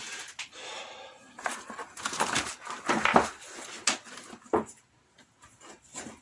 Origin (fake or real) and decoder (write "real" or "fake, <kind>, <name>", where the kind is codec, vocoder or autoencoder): real